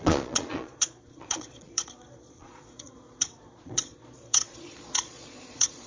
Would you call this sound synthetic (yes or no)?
yes